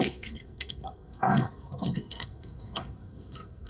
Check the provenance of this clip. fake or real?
fake